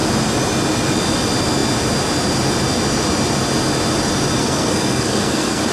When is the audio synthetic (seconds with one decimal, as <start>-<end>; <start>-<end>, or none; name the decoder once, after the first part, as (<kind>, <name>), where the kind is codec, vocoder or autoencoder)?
4.4-5.7 (codec, SNAC)